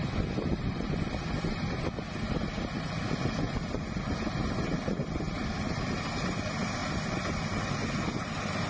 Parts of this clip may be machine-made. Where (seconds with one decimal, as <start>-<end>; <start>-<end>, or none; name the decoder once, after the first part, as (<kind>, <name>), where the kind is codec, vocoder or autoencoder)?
none